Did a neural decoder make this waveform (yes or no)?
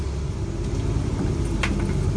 no